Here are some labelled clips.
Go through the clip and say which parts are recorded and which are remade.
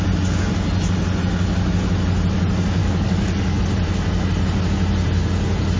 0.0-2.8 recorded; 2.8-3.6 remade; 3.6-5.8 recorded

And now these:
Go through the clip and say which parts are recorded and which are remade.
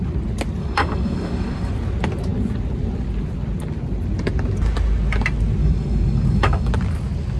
0.0-0.6 recorded; 0.6-1.7 remade; 1.7-5.6 recorded; 5.6-6.7 remade; 6.7-7.4 recorded